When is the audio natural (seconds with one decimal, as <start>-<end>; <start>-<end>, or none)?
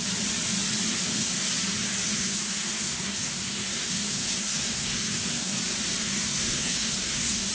0.0-0.9; 1.5-2.1; 5.6-6.0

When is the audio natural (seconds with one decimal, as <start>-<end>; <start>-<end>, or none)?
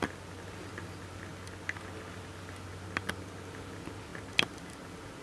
0.0-5.2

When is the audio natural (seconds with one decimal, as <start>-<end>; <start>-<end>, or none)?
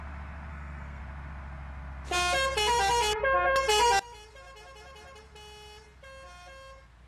0.0-0.5; 1.0-7.1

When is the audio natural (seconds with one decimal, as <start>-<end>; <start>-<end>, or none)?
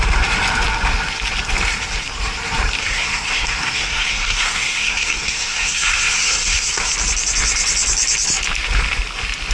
0.0-2.8; 6.9-9.5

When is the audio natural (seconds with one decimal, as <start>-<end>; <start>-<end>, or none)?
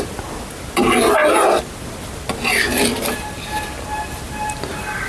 0.0-5.1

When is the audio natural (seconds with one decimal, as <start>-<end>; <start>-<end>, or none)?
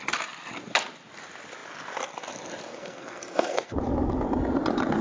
0.0-2.7; 3.8-5.0